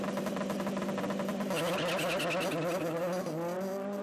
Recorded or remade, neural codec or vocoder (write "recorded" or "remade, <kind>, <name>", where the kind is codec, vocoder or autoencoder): recorded